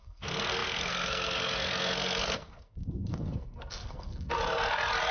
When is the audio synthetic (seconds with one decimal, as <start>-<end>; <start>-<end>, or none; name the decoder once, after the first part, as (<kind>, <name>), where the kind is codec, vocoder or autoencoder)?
0.0-4.4 (codec, SNAC)